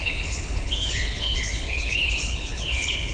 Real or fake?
fake